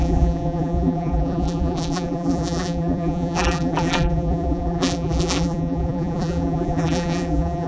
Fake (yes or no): yes